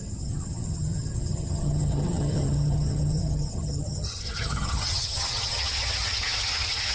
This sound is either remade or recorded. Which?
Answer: remade